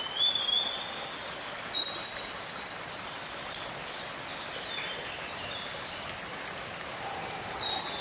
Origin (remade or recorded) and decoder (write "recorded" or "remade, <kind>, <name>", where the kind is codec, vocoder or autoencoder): recorded